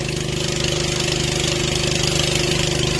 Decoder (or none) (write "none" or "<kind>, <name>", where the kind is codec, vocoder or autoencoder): none